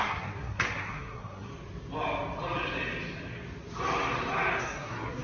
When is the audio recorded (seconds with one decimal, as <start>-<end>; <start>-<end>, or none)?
1.5-4.6